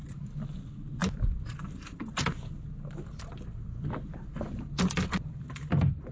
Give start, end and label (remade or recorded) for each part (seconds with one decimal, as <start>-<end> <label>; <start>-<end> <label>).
0.0-6.1 recorded